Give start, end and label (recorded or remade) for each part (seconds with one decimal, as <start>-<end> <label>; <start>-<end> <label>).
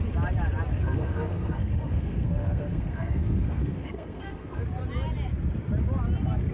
0.0-0.7 recorded; 0.7-4.6 remade; 4.6-6.5 recorded